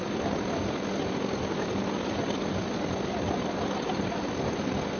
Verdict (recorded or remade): recorded